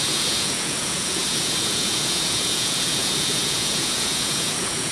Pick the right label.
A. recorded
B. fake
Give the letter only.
B